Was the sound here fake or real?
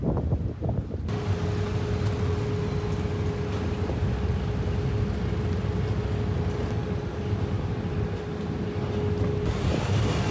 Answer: real